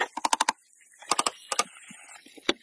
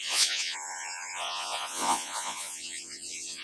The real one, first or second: first